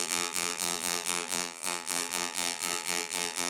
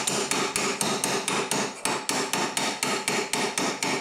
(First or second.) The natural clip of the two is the second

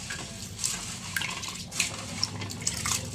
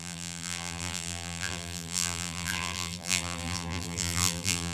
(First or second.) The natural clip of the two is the first